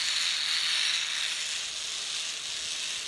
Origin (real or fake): real